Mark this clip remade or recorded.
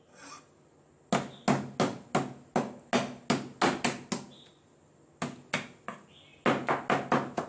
recorded